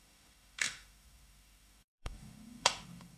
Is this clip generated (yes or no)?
yes